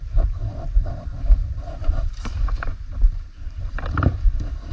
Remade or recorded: remade